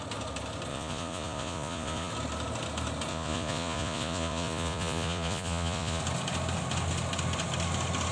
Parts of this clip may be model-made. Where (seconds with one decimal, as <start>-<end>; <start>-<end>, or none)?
0.7-2.1; 3.1-6.0